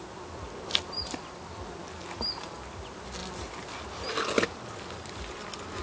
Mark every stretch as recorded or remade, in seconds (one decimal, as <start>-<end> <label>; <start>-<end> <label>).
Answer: 0.0-5.8 recorded